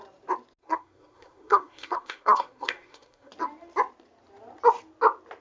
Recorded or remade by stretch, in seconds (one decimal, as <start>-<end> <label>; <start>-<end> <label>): 0.0-0.6 recorded; 0.6-3.3 remade; 3.3-5.4 recorded